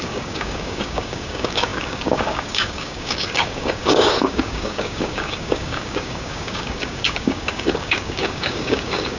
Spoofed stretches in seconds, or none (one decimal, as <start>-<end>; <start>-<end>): 0.0-9.2